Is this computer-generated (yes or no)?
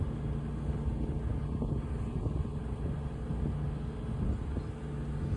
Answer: no